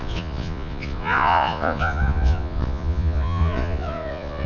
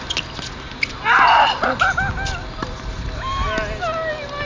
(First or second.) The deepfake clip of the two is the first